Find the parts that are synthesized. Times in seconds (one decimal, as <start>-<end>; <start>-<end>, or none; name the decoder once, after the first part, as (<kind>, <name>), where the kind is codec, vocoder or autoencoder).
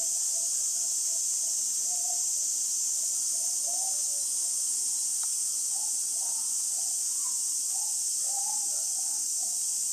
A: none